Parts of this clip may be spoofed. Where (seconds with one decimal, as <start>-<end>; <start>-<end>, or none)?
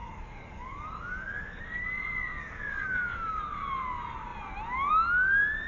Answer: 0.0-1.6; 2.4-3.4